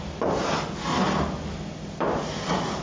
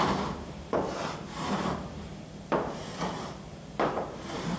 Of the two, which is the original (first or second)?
first